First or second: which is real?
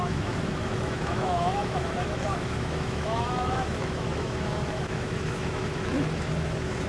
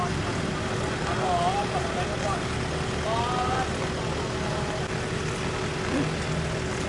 second